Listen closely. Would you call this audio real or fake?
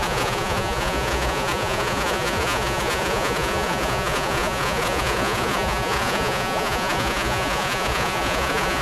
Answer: fake